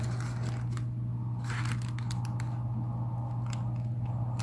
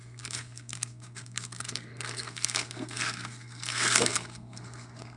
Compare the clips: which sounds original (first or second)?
first